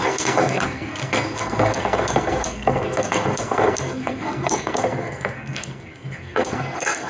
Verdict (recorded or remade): remade